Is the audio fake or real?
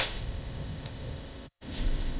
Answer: fake